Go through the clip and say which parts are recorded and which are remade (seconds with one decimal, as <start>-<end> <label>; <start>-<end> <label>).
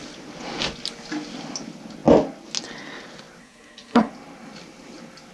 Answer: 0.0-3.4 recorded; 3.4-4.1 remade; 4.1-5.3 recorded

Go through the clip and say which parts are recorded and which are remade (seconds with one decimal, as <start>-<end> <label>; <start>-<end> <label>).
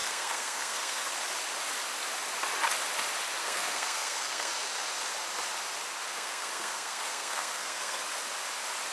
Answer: 0.0-1.1 remade; 1.1-3.4 recorded; 3.4-4.5 remade; 4.5-6.1 recorded; 6.1-8.0 remade; 8.0-8.9 recorded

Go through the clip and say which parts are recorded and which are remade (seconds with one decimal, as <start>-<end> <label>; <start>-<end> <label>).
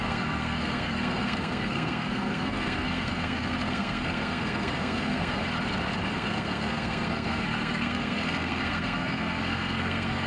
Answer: 0.0-5.4 remade; 5.4-6.1 recorded; 6.1-10.3 remade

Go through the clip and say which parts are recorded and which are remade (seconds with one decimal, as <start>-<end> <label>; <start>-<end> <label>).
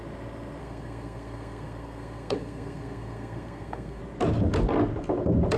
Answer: 0.0-0.6 recorded; 0.6-4.0 remade; 4.0-5.6 recorded